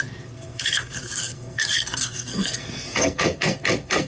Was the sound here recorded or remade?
remade